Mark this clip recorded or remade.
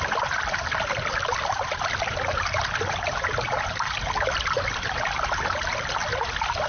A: recorded